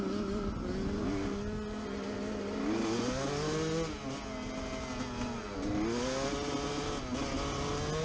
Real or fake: real